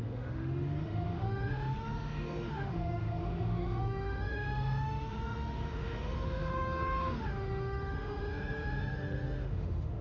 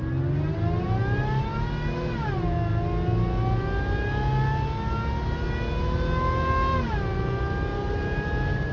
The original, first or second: second